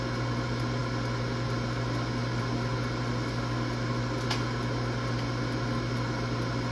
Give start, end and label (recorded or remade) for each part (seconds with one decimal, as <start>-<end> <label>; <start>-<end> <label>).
0.0-6.7 recorded